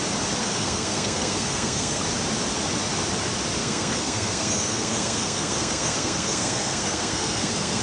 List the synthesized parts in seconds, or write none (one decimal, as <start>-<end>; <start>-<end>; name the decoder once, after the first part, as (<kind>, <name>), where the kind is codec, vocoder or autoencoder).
0.4-2.0 (codec, SNAC); 3.6-7.8